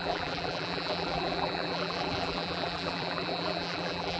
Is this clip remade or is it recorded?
remade